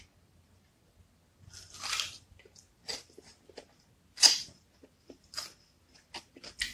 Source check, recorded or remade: recorded